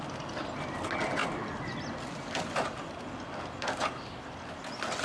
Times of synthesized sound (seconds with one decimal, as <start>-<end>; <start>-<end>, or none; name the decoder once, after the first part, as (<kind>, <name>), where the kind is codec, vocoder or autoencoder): none